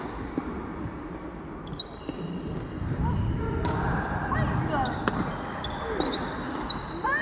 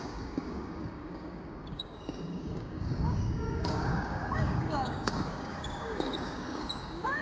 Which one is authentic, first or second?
first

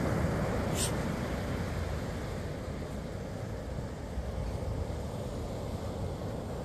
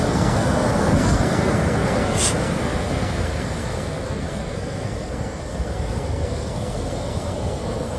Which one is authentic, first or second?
first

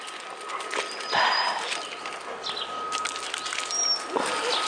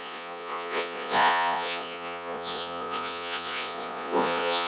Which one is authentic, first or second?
first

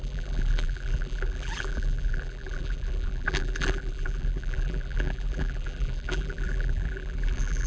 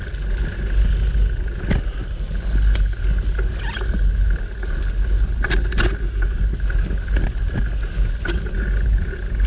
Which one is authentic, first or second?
second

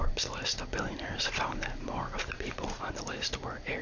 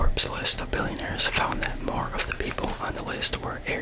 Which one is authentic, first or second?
second